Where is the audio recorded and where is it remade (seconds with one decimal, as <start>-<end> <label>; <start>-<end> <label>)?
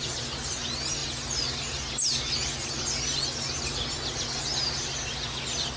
0.0-5.8 recorded